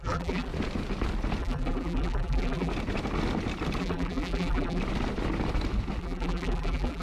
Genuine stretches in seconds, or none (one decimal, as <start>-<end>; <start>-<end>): 0.5-1.4; 2.7-3.8; 4.8-6.0